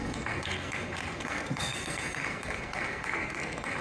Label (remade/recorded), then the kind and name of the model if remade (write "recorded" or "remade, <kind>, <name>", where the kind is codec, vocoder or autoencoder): remade, codec, SNAC